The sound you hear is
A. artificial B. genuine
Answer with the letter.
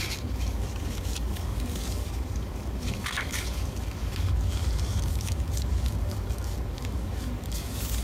A